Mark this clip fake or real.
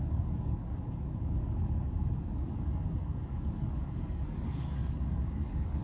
fake